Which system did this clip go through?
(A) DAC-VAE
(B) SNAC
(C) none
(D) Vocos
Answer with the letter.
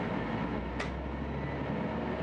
C